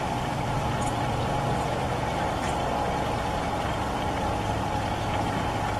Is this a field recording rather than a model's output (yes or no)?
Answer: yes